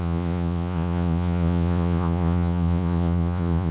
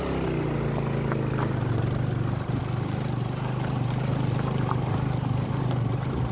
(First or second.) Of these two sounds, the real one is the second